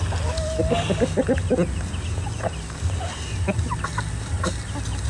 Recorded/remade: recorded